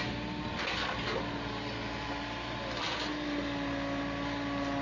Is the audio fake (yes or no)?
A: no